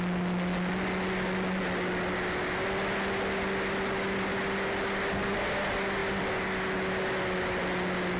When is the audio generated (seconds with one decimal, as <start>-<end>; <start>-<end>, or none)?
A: none